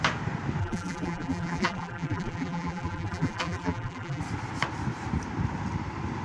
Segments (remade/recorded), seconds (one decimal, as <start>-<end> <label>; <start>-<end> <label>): 0.0-0.6 recorded; 0.6-4.2 remade; 4.2-6.2 recorded